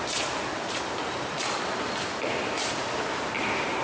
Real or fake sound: fake